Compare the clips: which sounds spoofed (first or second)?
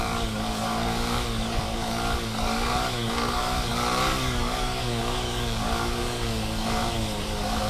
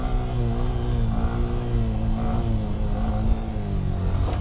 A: first